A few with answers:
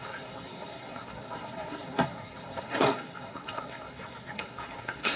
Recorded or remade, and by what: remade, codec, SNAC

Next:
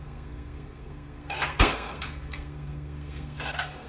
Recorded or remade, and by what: remade, codec, SNAC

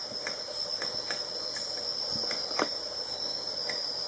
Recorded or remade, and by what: recorded